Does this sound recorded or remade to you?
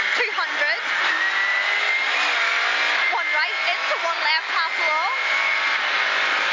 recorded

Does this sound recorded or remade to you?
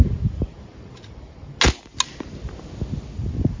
recorded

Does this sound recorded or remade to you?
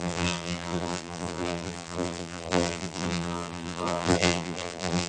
remade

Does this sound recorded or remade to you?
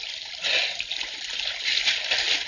recorded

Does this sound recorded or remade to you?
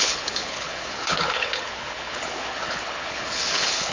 remade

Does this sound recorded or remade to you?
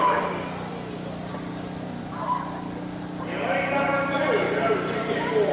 recorded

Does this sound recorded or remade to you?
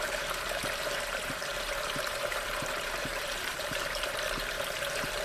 remade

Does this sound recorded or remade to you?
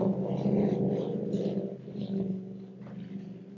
recorded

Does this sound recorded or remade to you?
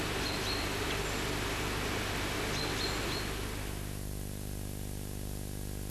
recorded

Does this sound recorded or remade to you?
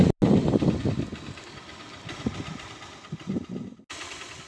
recorded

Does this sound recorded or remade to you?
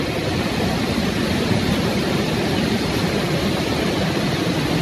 recorded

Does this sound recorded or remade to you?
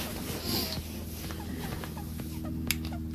recorded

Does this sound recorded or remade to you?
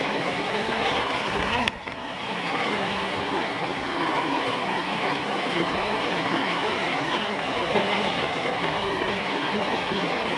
remade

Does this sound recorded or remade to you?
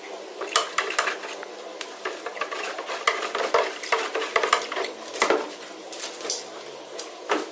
recorded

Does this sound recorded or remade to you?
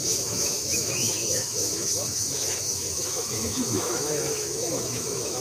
remade